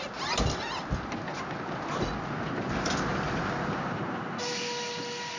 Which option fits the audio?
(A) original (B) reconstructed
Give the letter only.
A